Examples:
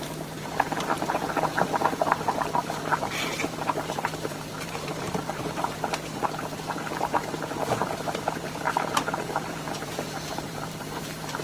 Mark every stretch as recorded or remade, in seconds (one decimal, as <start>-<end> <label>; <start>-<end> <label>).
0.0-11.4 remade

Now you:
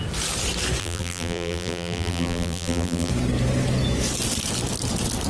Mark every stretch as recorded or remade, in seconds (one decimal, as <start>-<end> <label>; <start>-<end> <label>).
0.0-0.8 recorded; 0.8-3.1 remade; 3.1-5.3 recorded

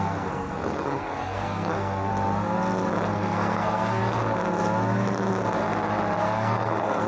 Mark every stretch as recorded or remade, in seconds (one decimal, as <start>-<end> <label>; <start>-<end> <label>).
0.0-2.1 remade; 2.1-3.1 recorded; 3.1-4.0 remade; 4.0-6.2 recorded; 6.2-7.1 remade